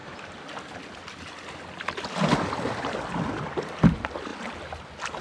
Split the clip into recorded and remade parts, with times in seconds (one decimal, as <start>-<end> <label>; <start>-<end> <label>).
0.0-5.2 recorded